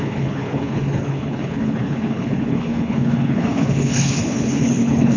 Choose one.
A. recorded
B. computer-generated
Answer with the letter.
B